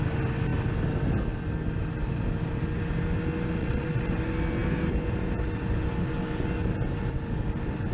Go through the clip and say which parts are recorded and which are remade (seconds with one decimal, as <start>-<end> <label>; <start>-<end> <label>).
0.0-3.6 recorded; 3.6-4.1 remade; 4.1-7.9 recorded